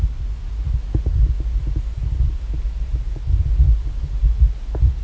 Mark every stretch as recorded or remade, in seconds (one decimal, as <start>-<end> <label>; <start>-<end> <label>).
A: 0.0-5.0 recorded